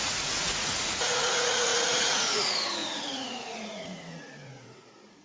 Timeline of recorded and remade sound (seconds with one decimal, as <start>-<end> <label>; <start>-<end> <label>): 0.0-5.2 remade